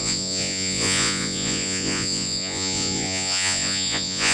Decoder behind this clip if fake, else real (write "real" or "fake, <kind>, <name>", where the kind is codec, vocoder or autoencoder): fake, vocoder, Vocos